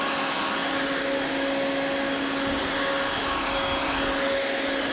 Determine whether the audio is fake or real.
real